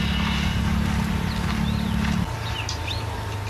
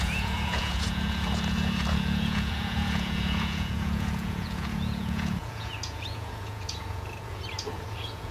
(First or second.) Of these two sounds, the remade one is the second